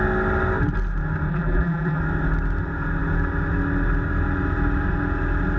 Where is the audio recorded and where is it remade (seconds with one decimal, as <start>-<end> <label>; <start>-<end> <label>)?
0.0-1.3 recorded; 1.3-2.0 remade; 2.0-5.6 recorded

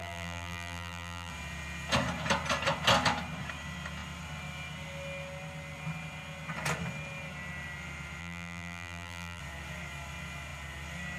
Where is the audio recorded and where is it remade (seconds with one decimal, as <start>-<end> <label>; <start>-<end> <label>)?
0.0-1.3 remade; 1.3-8.2 recorded; 8.2-9.4 remade; 9.4-11.2 recorded

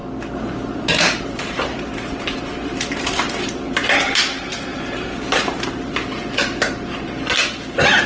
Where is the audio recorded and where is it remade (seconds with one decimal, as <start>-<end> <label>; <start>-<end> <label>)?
0.0-1.0 recorded; 1.0-8.1 remade

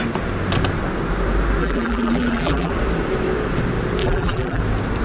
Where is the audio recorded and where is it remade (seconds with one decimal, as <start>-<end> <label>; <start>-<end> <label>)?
0.0-1.6 recorded; 1.6-2.7 remade; 2.7-4.0 recorded; 4.0-4.6 remade; 4.6-5.0 recorded

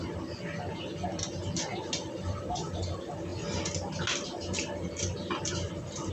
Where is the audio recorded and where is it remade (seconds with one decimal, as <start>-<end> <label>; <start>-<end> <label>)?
0.0-1.7 recorded; 1.7-2.4 remade; 2.4-6.1 recorded

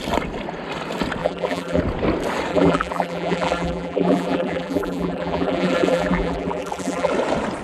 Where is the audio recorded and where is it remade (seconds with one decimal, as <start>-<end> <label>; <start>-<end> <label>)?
0.0-1.2 recorded; 1.2-1.8 remade; 1.8-2.5 recorded; 2.5-7.1 remade; 7.1-7.6 recorded

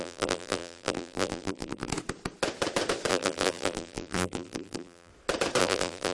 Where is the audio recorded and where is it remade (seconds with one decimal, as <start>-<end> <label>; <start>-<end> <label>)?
0.0-1.9 remade; 1.9-3.1 recorded; 3.1-5.1 remade; 5.1-5.6 recorded; 5.6-6.1 remade

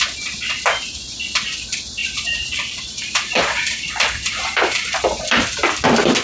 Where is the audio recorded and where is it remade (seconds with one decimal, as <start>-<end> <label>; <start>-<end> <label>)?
0.0-2.0 recorded; 2.0-5.7 remade; 5.7-6.2 recorded